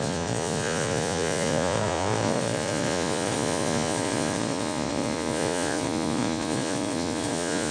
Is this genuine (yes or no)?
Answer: no